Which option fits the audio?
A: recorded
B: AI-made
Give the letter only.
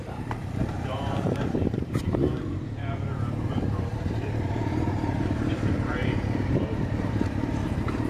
B